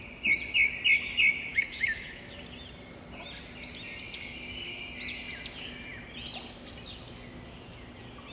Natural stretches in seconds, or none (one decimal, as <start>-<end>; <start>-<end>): 0.0-1.5; 2.3-8.3